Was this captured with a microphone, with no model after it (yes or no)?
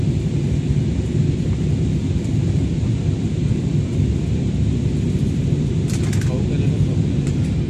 yes